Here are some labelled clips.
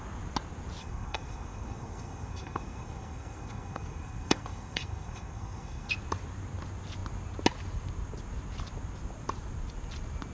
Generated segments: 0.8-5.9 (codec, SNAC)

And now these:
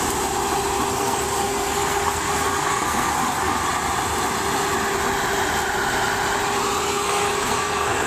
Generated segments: 0.9-3.6 (codec, SNAC); 6.8-8.1

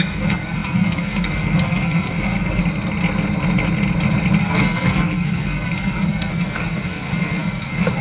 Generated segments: 0.0-2.6 (codec, SNAC); 4.4-8.0

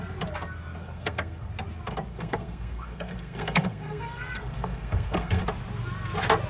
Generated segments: 0.8-1.5 (codec, SNAC); 2.1-5.4